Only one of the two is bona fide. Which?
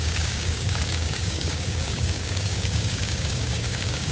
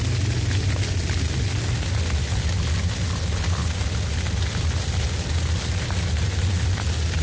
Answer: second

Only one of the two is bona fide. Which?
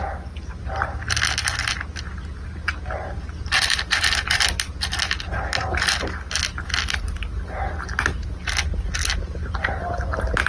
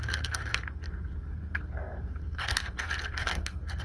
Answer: first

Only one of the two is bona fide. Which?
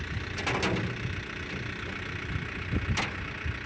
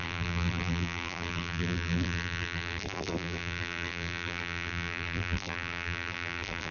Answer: first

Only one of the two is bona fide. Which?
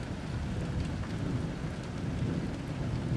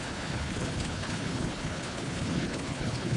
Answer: first